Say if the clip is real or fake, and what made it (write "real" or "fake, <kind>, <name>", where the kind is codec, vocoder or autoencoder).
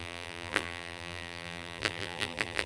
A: fake, vocoder, BigVGAN v2